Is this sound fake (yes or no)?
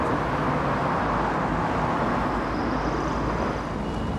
no